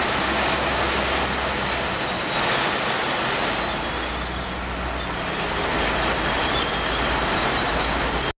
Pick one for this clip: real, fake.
real